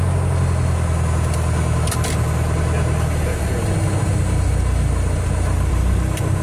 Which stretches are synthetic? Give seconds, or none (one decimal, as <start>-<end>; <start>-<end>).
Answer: none